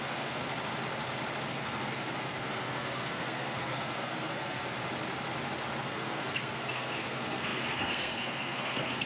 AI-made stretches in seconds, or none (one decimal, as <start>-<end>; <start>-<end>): 0.0-0.4; 1.5-4.8; 5.8-9.1